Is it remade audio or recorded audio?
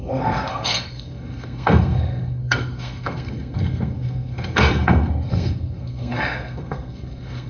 remade